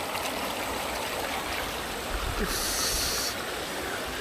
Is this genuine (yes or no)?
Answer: yes